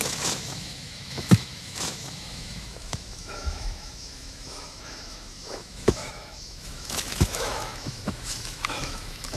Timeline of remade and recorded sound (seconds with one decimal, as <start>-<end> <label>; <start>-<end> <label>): 0.0-9.4 remade